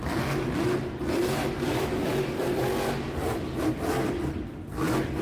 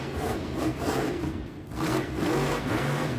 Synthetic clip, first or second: second